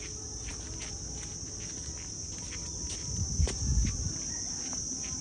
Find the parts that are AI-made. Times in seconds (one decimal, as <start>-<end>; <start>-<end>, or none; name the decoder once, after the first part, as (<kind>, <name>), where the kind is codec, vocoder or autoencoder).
none